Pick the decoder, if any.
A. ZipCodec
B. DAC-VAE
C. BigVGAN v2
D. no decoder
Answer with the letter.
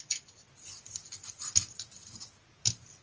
D